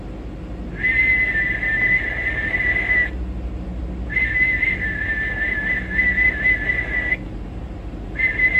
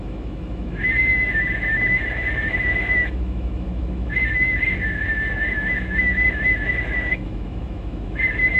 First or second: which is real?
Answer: first